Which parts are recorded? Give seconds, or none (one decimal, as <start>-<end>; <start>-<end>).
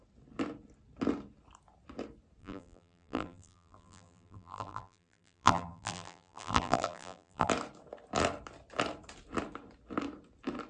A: 0.0-2.4; 7.5-10.7